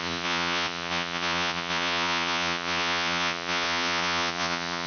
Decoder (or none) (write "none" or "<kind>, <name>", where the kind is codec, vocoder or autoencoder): vocoder, Vocos